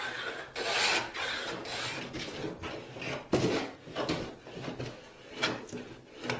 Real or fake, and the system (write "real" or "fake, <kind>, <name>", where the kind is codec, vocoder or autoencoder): real